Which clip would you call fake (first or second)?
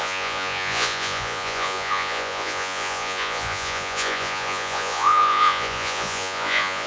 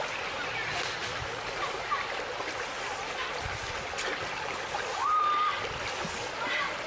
first